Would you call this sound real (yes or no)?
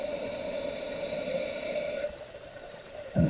no